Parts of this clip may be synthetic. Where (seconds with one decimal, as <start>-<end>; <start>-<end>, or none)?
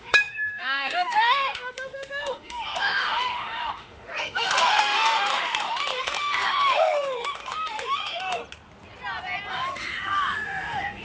0.0-8.4; 9.5-11.0